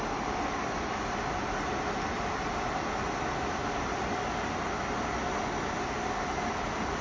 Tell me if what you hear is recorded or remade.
recorded